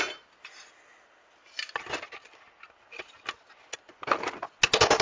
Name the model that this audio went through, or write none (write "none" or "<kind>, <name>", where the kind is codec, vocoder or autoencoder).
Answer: none